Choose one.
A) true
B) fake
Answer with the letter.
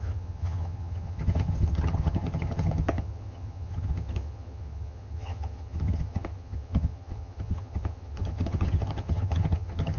B